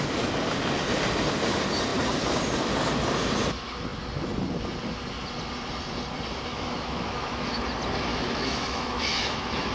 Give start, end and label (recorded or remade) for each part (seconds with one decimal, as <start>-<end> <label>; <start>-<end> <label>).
0.0-6.5 recorded; 6.5-7.6 remade; 7.6-8.1 recorded; 8.1-9.7 remade